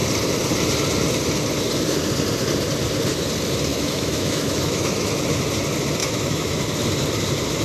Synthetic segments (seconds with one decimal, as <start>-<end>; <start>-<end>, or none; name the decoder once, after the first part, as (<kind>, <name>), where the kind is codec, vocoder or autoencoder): 3.7-5.1 (autoencoder, DAC-VAE); 6.0-6.6